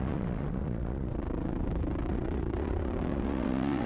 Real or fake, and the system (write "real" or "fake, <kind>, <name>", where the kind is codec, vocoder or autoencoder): fake, vocoder, WaveNeXt